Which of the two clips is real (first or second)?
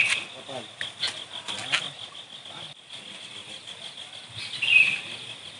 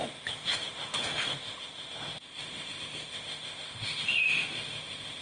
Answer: first